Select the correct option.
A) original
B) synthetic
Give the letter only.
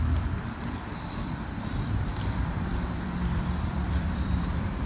B